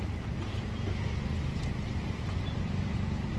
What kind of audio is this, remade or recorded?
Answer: recorded